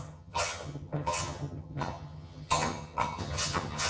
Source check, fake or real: fake